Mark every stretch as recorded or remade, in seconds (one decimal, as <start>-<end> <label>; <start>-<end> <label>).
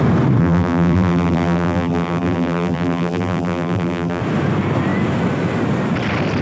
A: 0.0-0.4 recorded; 0.4-4.2 remade; 4.2-6.4 recorded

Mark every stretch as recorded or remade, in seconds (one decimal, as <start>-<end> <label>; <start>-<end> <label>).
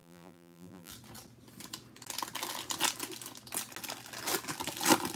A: 0.0-0.9 remade; 0.9-5.2 recorded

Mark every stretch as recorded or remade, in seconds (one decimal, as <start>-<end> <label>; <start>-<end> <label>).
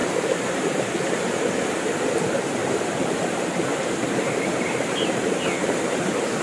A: 0.0-0.9 remade; 0.9-2.6 recorded; 2.6-5.3 remade; 5.3-6.4 recorded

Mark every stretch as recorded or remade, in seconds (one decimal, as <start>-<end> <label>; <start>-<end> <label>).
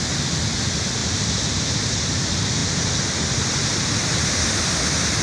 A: 0.0-1.0 recorded; 1.0-1.7 remade; 1.7-5.2 recorded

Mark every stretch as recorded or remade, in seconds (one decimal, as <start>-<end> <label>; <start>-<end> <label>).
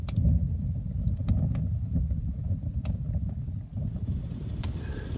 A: 0.0-5.2 recorded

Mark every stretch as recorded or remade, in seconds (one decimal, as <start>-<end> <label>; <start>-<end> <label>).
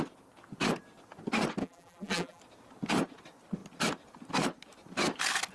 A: 0.0-1.6 recorded; 1.6-2.4 remade; 2.4-5.5 recorded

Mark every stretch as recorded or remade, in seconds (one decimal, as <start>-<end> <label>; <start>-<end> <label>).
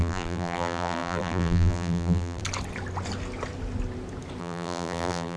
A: 0.0-2.4 remade; 2.4-4.4 recorded; 4.4-5.4 remade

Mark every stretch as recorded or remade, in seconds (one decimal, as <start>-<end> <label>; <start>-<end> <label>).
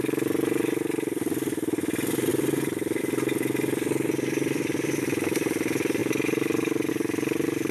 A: 0.0-7.7 recorded